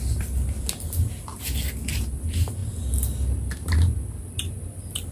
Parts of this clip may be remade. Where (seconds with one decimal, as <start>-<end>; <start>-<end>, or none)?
none